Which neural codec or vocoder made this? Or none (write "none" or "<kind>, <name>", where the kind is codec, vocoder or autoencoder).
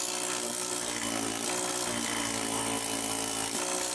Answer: none